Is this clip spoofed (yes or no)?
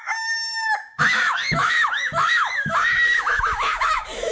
yes